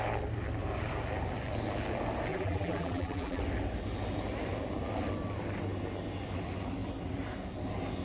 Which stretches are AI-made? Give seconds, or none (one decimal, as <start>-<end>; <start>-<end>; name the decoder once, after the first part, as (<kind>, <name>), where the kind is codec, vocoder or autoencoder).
2.3-3.4 (vocoder, BigVGAN v2)